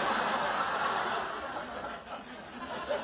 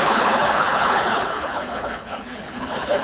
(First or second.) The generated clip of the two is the second